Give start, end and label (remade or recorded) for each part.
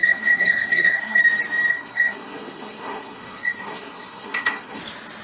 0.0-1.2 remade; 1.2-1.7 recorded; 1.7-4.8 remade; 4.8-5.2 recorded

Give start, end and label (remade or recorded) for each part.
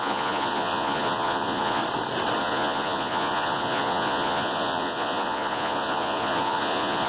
0.0-1.8 remade; 1.8-2.4 recorded; 2.4-7.1 remade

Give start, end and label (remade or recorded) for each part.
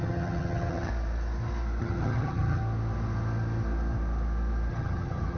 0.0-0.9 remade; 0.9-1.8 recorded; 1.8-2.6 remade; 2.6-4.7 recorded; 4.7-5.4 remade